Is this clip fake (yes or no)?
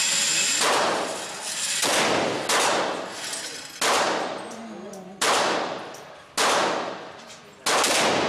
no